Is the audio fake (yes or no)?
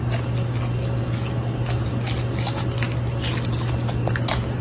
no